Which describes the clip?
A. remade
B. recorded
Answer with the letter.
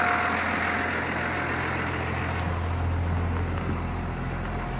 B